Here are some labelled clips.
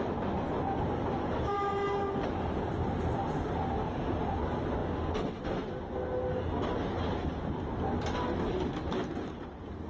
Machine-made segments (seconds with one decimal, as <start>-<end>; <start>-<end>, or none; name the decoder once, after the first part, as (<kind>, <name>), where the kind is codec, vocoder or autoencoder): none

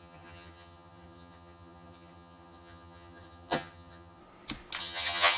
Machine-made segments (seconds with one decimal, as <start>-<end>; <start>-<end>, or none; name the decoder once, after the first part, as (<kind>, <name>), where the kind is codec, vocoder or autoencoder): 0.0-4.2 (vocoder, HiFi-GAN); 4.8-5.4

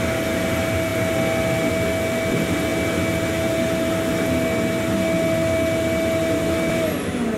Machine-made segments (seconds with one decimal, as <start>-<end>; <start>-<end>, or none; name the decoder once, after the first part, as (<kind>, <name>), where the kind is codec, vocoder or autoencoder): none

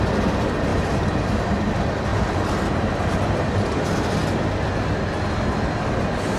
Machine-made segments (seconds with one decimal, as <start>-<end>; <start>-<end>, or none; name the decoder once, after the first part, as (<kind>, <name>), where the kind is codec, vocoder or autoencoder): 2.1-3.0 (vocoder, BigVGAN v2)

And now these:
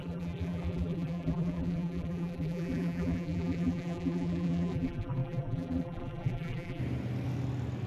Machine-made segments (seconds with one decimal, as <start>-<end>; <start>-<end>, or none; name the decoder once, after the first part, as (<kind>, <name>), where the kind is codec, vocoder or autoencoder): 0.0-6.8 (vocoder, BigVGAN v2)

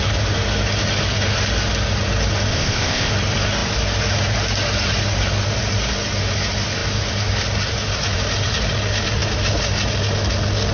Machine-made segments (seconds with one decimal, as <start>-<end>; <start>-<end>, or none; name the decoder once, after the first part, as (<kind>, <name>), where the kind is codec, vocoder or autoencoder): 2.5-3.1 (codec, ZipCodec)

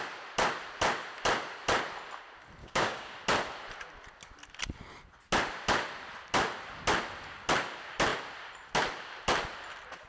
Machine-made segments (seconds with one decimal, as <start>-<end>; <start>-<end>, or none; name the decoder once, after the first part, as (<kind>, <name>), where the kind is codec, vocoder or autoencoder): 2.6-3.1 (codec, DAC)

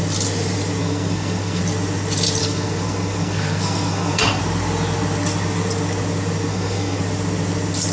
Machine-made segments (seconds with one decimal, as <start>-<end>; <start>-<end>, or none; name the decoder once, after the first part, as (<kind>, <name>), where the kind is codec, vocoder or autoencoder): 0.8-1.6 (codec, SNAC); 2.4-4.4; 6.5-7.0